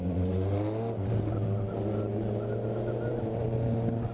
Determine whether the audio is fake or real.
real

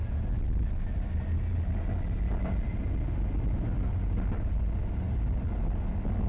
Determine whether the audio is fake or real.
real